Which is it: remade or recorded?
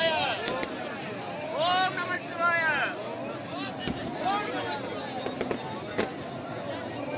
recorded